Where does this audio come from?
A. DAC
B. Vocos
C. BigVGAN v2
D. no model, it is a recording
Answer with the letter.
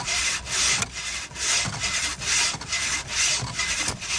D